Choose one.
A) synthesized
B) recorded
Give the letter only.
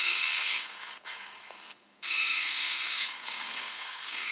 A